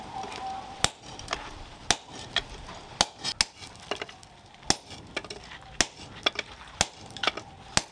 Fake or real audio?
real